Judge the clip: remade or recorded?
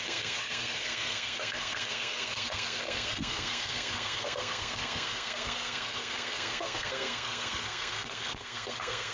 remade